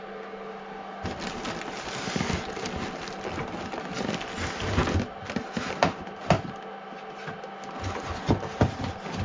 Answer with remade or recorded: recorded